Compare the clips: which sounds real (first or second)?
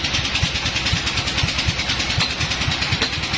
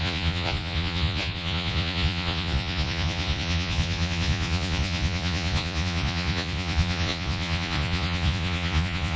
first